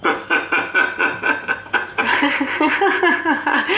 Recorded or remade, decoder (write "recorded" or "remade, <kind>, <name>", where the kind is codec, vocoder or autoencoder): recorded